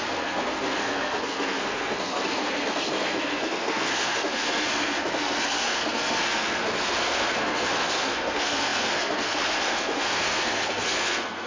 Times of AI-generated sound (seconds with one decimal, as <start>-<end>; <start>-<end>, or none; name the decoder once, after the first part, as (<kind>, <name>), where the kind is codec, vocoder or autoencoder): 0.0-11.5 (codec, SNAC)